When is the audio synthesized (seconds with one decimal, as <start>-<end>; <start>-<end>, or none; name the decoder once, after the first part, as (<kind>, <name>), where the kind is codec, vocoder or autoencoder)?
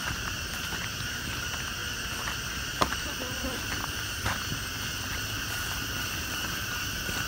none